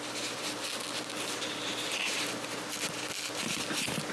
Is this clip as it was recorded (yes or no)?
yes